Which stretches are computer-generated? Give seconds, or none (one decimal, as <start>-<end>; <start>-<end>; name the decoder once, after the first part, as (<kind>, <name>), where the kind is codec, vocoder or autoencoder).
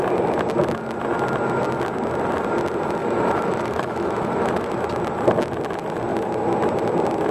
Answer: 3.0-4.7 (autoencoder, DAC-VAE)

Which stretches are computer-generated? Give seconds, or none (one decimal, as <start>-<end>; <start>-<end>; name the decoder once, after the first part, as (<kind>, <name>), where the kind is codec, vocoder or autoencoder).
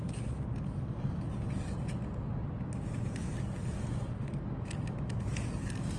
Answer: none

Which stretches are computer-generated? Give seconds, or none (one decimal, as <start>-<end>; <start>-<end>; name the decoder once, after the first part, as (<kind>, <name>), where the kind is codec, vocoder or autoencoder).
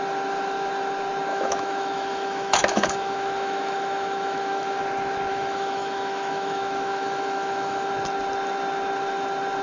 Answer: 1.3-4.8 (autoencoder, DAC-VAE); 5.3-7.9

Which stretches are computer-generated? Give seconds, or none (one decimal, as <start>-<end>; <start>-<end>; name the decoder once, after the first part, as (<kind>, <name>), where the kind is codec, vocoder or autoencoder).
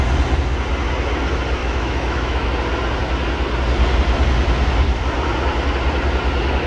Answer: 1.6-2.5 (autoencoder, DAC-VAE)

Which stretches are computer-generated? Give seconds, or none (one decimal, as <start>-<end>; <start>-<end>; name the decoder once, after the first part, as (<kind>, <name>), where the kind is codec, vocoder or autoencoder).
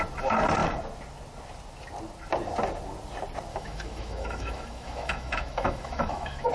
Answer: 3.5-6.5 (autoencoder, DAC-VAE)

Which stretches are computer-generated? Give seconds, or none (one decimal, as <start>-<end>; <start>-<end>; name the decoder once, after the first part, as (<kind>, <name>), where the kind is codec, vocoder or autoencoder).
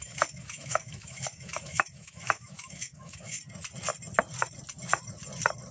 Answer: 0.0-3.4 (autoencoder, DAC-VAE)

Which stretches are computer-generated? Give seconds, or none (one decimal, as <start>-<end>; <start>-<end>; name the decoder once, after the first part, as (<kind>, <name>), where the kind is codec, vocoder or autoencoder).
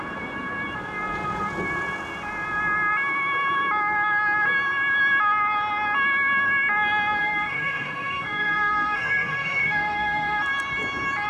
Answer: 7.2-10.4 (autoencoder, DAC-VAE)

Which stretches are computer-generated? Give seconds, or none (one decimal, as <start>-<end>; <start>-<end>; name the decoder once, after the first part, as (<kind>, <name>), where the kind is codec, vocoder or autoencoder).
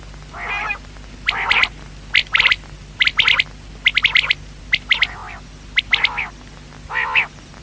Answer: none